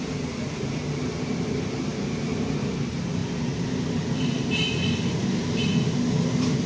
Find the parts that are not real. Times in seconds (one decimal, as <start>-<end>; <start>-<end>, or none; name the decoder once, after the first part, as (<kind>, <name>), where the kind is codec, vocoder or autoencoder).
none